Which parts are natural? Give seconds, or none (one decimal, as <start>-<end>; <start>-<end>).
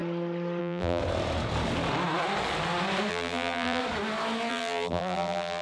0.0-0.6; 1.0-3.1; 3.8-4.5